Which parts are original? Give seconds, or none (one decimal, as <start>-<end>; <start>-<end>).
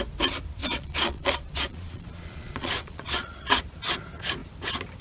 0.0-0.6; 3.6-5.0